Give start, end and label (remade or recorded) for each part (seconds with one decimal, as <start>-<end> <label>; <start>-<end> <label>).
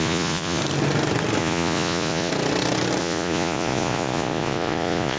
0.0-0.6 remade; 0.6-1.4 recorded; 1.4-2.3 remade; 2.3-3.0 recorded; 3.0-5.2 remade